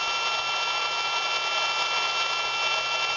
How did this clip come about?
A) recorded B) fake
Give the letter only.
A